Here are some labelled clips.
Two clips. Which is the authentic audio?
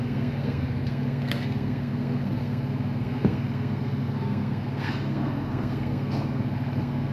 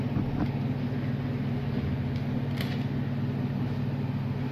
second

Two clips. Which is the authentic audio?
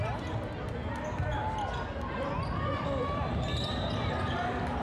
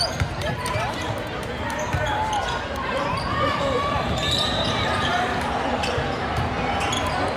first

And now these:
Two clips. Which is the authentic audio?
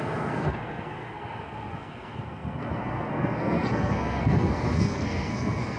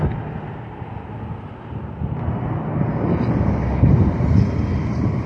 second